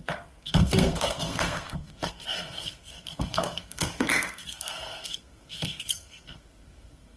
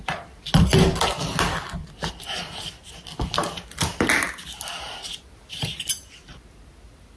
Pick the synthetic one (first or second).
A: first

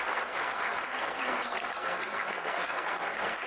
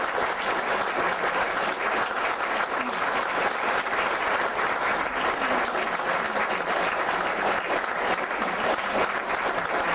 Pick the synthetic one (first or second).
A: first